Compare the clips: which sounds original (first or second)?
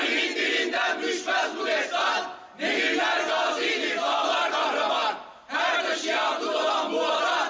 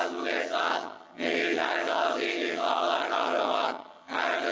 first